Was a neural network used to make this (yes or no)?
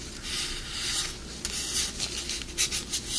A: no